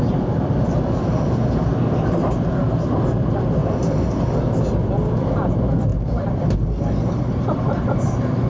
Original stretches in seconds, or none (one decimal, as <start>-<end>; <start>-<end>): 0.0-5.9; 6.4-8.5